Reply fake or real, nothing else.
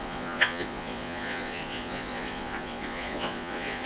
fake